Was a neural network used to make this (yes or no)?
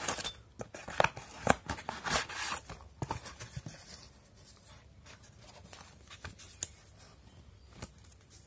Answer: no